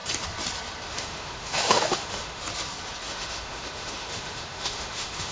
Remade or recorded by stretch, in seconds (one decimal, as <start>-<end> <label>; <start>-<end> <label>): 0.0-0.9 recorded; 0.9-2.4 remade; 2.4-3.0 recorded; 3.0-5.3 remade